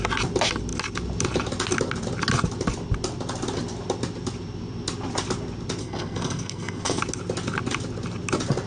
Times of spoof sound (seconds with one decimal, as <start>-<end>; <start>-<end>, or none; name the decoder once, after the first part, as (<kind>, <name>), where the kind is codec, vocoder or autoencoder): 5.8-7.0 (codec, SNAC)

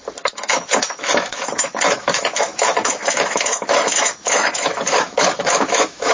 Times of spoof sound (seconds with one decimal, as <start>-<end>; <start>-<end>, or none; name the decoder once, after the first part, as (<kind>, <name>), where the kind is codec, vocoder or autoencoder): 0.5-6.1 (autoencoder, DAC-VAE)

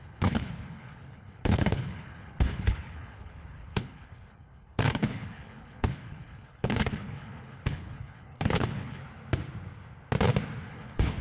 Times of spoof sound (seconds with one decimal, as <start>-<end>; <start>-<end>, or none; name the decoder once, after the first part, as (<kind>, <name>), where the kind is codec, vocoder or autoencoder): 0.0-9.0 (codec, HILCodec); 10.7-11.2

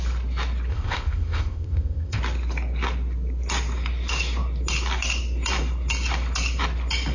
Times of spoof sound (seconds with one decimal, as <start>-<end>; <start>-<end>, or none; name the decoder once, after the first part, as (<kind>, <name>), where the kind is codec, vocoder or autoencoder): 0.7-2.2 (codec, ZipCodec)

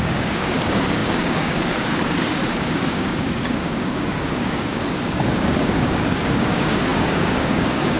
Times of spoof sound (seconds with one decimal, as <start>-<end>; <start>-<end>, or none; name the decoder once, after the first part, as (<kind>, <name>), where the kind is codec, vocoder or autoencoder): 0.0-8.0 (codec, DAC)

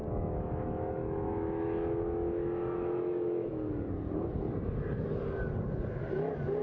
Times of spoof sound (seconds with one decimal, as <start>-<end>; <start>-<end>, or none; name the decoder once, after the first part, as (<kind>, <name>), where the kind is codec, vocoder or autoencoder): 0.0-3.7 (autoencoder, DAC-VAE)

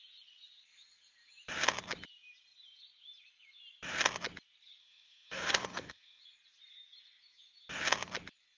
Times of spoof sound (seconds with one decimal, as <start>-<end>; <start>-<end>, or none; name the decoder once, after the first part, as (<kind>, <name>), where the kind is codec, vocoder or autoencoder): 4.8-6.2 (codec, DAC)

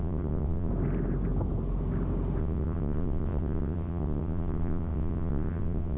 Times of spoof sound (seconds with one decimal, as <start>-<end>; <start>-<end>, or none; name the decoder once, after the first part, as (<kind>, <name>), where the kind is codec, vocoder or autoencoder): 0.0-0.7 (vocoder, WaveNeXt); 2.4-6.0